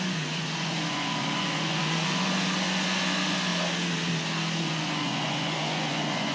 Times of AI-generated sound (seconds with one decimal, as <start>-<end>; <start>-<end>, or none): 0.0-3.5; 4.6-6.3